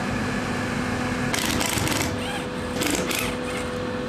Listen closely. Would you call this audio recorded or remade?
recorded